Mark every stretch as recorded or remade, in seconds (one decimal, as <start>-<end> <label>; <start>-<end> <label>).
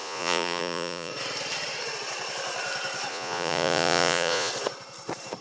0.0-1.1 remade; 1.1-3.1 recorded; 3.1-4.5 remade; 4.5-5.4 recorded